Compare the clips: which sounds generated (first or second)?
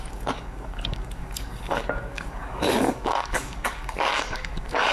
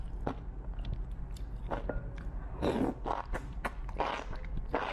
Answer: first